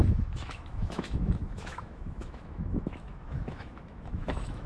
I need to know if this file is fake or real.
fake